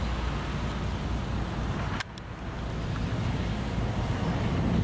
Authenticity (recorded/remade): recorded